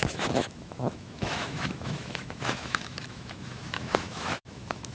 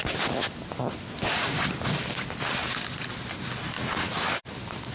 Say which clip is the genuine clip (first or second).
second